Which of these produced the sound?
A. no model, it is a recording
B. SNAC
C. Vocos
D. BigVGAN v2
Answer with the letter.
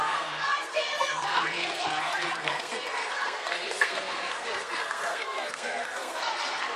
B